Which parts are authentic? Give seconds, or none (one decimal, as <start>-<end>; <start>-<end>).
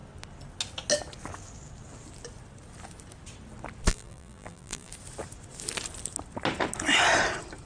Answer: 0.0-3.9; 4.9-7.7